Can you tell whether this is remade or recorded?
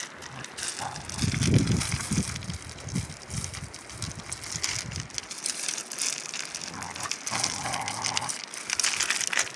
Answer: recorded